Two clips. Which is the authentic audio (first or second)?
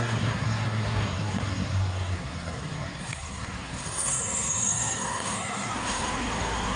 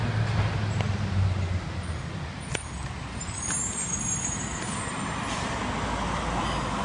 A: second